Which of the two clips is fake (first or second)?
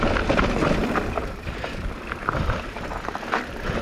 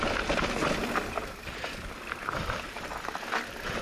first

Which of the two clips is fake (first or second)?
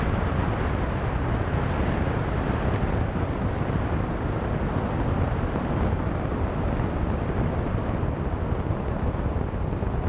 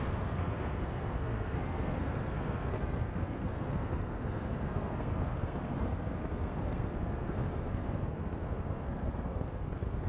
second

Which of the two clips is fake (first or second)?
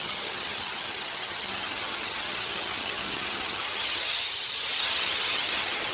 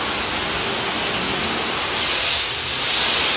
first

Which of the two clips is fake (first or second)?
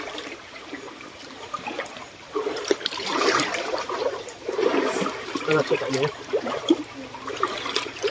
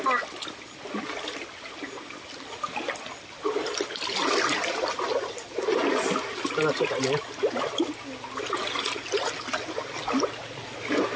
first